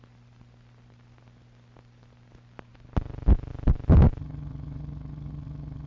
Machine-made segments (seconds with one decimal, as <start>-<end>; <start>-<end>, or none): 4.2-5.9